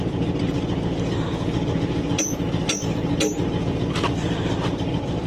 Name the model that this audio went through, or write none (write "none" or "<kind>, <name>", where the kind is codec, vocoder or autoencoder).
none